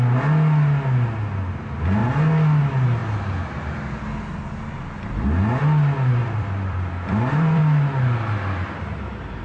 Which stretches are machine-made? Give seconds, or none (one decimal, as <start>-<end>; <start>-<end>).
6.2-7.6